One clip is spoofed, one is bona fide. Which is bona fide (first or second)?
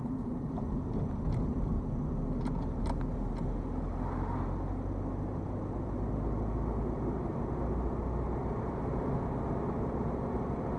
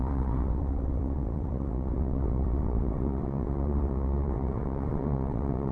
first